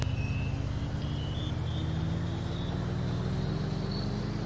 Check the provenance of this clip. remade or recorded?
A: recorded